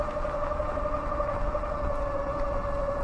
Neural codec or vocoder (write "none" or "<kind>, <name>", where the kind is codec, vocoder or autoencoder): none